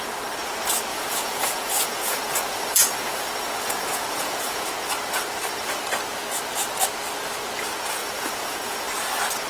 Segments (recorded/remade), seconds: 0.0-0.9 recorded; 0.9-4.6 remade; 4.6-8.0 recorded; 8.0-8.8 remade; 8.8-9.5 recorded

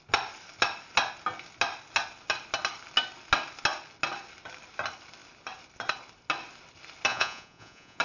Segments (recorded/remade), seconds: 0.0-7.1 recorded; 7.1-8.0 remade

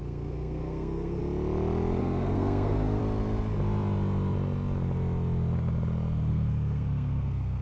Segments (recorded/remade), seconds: 0.0-1.2 remade; 1.2-2.0 recorded; 2.0-3.0 remade; 3.0-6.3 recorded; 6.3-7.6 remade

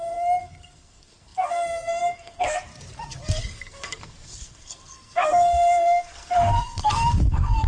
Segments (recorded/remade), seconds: 0.0-2.7 remade; 2.7-3.4 recorded; 3.4-7.7 remade

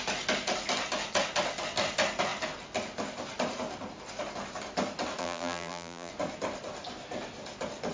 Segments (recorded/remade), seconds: 0.0-5.2 recorded; 5.2-6.1 remade; 6.1-7.9 recorded

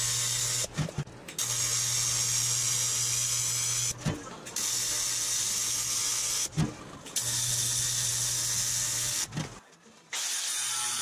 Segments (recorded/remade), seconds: 0.0-11.0 recorded

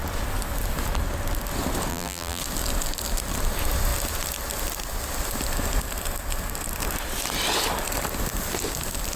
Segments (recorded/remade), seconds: 0.0-1.9 recorded; 1.9-2.4 remade; 2.4-9.2 recorded